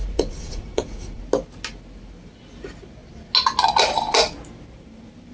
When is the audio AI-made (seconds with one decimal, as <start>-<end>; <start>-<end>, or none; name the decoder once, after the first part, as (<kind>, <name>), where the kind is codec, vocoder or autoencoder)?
0.0-1.2 (vocoder, Vocos)